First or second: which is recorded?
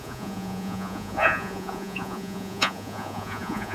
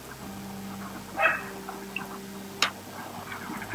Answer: second